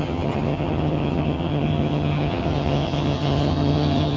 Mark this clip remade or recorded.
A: remade